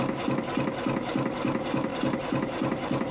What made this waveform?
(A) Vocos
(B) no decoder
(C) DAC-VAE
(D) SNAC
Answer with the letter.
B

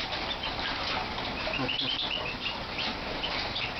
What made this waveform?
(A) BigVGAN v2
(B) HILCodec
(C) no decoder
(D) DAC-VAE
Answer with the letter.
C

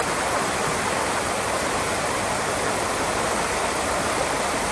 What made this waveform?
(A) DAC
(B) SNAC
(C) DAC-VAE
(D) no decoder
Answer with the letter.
D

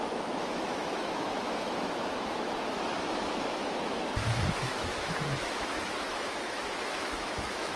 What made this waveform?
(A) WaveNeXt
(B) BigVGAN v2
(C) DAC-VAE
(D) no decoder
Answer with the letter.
C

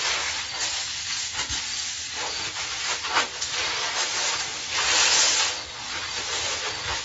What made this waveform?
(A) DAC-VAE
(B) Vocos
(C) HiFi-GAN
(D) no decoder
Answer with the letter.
D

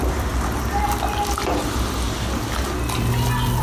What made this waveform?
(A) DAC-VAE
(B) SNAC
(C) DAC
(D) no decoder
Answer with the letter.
D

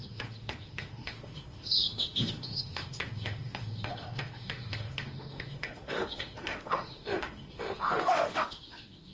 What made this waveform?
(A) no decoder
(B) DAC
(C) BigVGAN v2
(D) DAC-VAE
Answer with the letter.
D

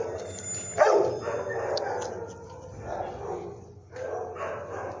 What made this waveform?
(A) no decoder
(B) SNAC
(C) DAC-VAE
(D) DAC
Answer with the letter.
A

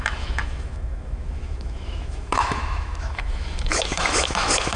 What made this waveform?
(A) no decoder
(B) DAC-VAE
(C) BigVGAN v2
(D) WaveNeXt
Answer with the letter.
B